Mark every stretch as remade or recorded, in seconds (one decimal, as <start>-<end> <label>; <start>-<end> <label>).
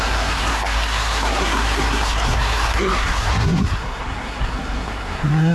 0.0-5.5 remade